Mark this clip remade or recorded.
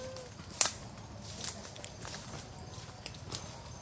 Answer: recorded